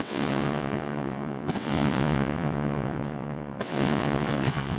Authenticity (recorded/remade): remade